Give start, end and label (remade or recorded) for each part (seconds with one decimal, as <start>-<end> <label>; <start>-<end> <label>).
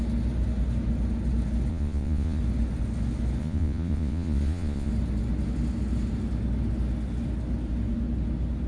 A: 0.0-1.7 recorded; 1.7-2.4 remade; 2.4-3.4 recorded; 3.4-4.9 remade; 4.9-8.7 recorded